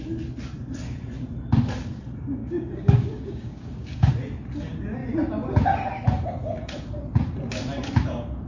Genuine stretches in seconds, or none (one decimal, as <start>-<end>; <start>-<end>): 0.0-2.4; 4.1-8.5